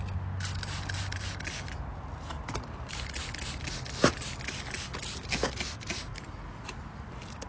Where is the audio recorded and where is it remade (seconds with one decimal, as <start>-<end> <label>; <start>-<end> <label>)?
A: 0.0-7.5 recorded